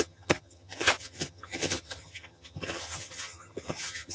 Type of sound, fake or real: fake